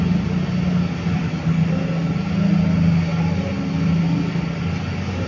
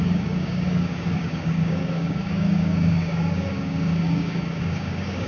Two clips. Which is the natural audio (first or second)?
first